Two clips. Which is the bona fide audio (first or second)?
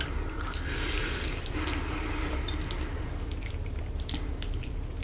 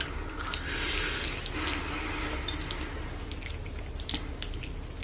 second